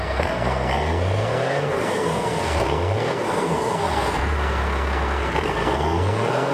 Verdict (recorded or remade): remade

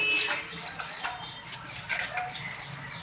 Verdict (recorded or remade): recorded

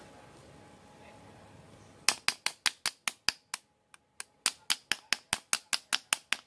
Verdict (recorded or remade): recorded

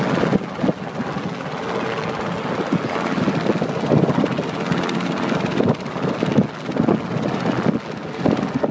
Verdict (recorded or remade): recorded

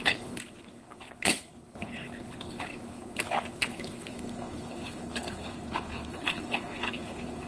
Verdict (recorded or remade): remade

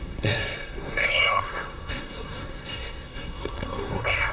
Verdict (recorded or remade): remade